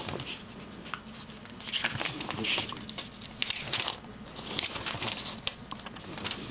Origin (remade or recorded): recorded